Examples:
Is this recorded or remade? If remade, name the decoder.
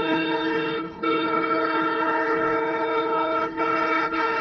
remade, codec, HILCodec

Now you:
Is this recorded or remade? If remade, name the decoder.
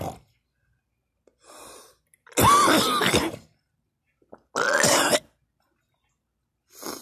recorded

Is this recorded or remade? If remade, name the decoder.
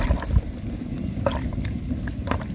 recorded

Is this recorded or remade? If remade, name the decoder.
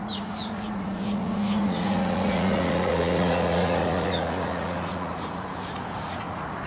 remade, vocoder, Vocos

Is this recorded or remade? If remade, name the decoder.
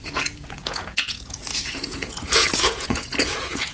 remade, vocoder, Vocos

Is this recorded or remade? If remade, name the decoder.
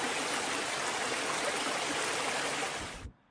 recorded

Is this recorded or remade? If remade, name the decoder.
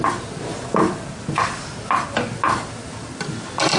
recorded